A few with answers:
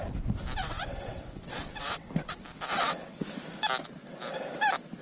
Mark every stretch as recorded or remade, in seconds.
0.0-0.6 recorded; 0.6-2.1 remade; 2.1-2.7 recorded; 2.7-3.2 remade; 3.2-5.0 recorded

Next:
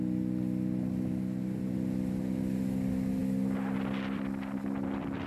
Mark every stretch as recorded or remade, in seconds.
0.0-5.3 recorded